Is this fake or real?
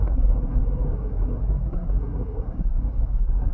fake